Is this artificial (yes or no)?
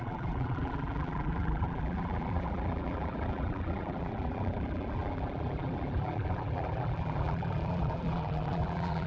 yes